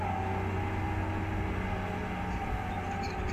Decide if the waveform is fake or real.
real